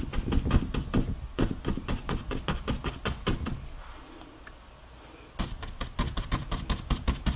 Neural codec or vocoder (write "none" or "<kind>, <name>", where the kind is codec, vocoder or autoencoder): none